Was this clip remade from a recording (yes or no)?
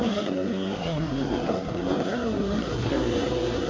yes